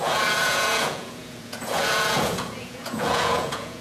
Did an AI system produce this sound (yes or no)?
yes